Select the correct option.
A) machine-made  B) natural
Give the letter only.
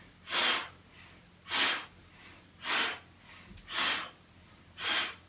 B